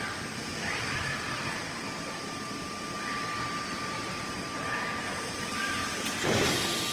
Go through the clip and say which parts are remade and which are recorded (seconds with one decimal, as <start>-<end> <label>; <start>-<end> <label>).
0.0-1.6 recorded; 1.6-5.7 remade; 5.7-6.9 recorded